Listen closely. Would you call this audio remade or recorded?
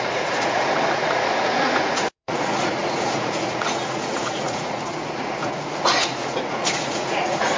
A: remade